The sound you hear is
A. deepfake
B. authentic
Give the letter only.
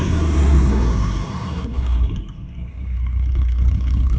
A